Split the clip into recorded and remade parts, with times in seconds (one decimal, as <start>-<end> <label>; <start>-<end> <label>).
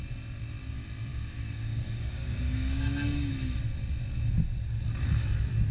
0.0-1.1 recorded; 1.1-3.3 remade; 3.3-5.7 recorded